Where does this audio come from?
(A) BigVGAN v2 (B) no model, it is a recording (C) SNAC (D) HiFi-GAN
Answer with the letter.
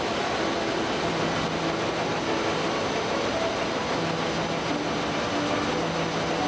B